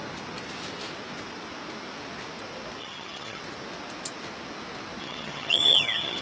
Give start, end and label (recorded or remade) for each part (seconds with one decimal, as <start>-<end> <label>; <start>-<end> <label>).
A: 0.0-2.8 recorded; 2.8-3.4 remade; 3.4-5.0 recorded; 5.0-6.2 remade